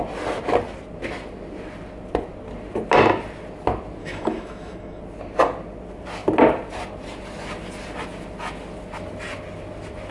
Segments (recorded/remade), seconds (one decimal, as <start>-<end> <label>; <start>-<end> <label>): 0.0-4.0 recorded; 4.0-5.0 remade; 5.0-10.1 recorded